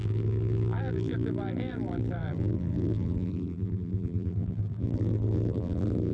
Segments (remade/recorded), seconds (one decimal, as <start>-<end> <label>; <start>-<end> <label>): 0.0-6.1 remade